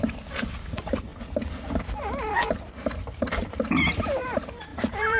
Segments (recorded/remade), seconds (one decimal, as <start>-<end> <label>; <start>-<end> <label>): 0.0-1.1 remade; 1.1-4.2 recorded; 4.2-5.2 remade